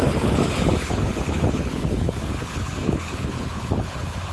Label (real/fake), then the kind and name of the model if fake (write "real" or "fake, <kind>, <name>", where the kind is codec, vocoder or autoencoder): fake, codec, HILCodec